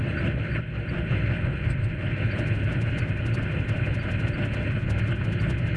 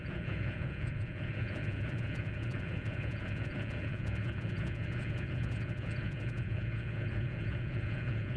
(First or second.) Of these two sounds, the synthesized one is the second